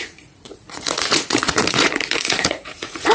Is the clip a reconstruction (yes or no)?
yes